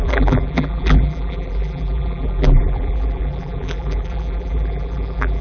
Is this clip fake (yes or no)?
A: yes